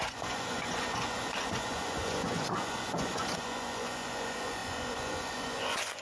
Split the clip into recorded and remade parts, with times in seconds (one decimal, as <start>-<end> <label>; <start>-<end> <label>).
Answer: 0.0-6.0 remade